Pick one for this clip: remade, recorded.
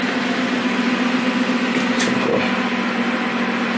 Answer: recorded